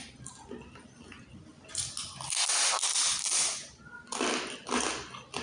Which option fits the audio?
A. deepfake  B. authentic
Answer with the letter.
B